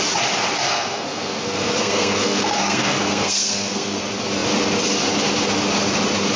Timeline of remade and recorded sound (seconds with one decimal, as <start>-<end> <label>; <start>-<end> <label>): 0.0-0.7 recorded; 0.7-4.0 remade; 4.0-6.4 recorded